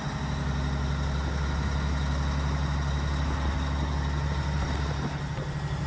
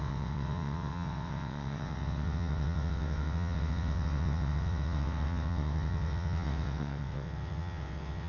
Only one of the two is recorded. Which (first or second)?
first